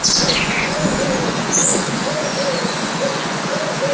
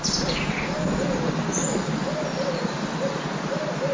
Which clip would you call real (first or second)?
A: second